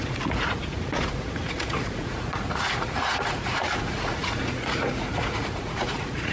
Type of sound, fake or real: fake